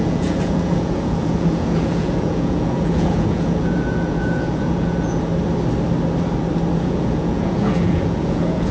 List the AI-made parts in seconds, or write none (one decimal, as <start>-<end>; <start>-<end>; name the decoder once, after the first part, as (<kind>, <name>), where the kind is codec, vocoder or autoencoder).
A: 0.0-5.3 (vocoder, Vocos); 6.7-8.7